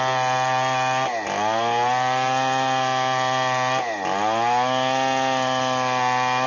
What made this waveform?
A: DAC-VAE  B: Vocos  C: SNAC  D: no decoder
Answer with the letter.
D